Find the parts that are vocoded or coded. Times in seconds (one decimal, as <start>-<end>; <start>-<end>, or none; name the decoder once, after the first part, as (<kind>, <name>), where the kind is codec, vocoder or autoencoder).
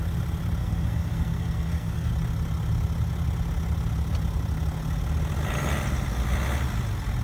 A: 0.6-2.1 (codec, SNAC)